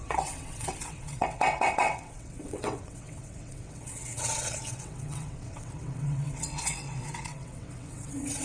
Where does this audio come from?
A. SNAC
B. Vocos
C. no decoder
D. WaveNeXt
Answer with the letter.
D